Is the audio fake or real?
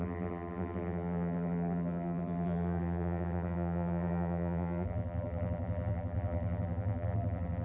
fake